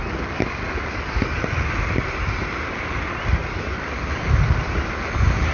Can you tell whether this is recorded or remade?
recorded